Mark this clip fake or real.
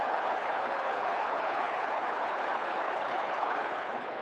fake